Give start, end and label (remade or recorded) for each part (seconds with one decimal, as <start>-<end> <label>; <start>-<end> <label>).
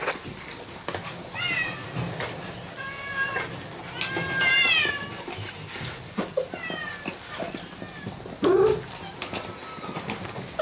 0.0-10.6 recorded